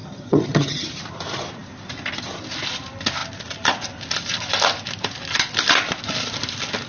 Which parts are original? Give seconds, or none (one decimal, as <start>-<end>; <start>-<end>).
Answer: 1.0-6.9